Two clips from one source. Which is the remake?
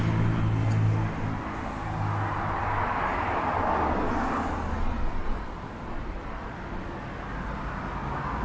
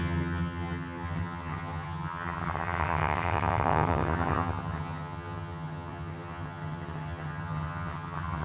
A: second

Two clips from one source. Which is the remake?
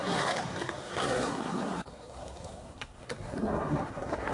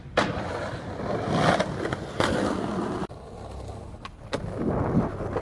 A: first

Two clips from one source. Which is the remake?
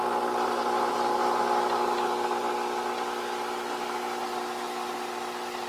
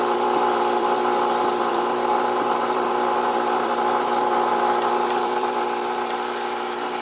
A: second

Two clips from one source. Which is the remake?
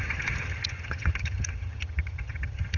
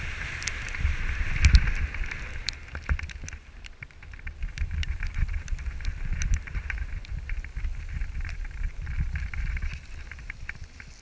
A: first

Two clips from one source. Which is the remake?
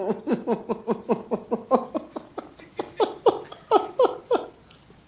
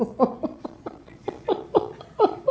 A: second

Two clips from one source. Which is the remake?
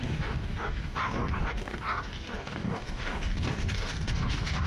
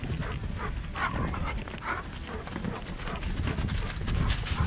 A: first